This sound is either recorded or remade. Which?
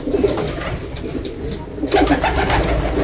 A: recorded